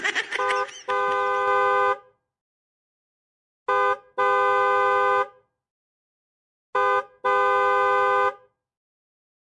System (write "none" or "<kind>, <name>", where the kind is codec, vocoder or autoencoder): none